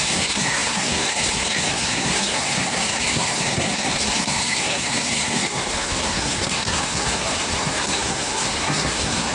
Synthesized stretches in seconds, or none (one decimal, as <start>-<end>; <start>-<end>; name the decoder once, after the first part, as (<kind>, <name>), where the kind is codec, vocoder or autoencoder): 0.0-9.3 (codec, SNAC)